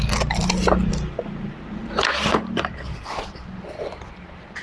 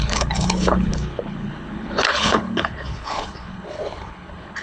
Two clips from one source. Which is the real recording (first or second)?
first